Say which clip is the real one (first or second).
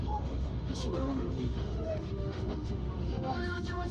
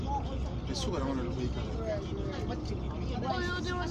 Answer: second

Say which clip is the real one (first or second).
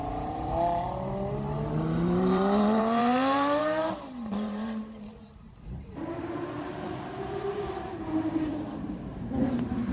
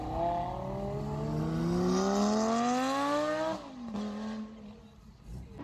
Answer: second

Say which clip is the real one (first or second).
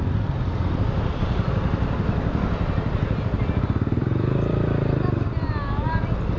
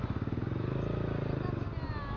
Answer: second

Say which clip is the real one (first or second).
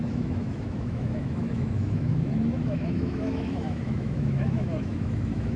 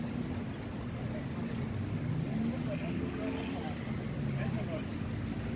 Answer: second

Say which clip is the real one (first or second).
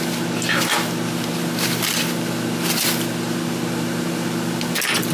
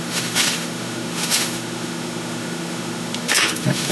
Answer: first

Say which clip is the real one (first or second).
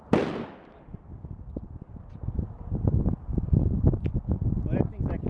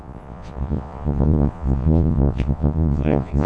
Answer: first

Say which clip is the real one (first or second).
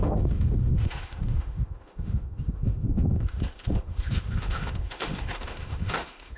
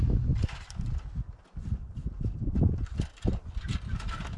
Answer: second